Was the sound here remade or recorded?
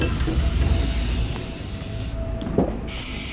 recorded